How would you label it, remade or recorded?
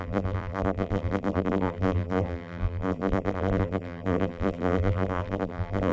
remade